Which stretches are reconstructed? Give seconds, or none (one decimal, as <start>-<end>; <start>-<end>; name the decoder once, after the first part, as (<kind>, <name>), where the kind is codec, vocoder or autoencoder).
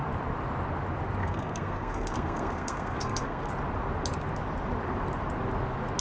1.2-3.5 (codec, SNAC)